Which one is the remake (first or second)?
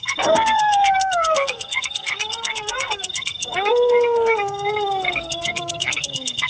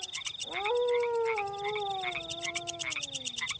first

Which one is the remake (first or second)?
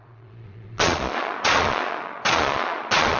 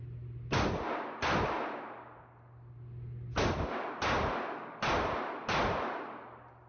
first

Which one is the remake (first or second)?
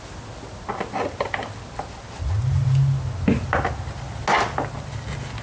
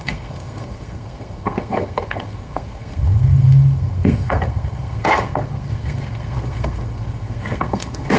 second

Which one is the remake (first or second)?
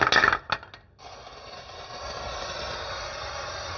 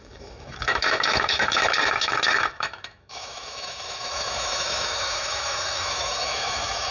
second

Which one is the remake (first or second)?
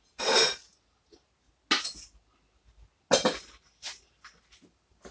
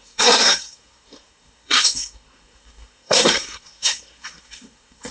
second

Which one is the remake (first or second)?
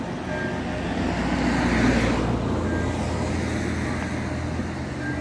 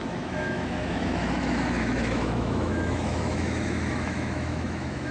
second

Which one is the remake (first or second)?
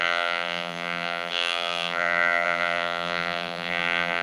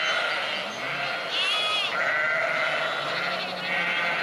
first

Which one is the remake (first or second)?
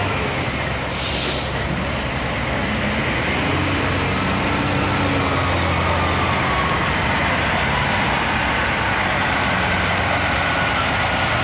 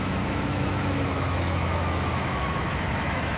second